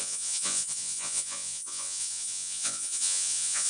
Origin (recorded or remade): remade